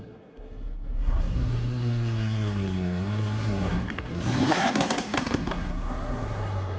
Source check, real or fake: fake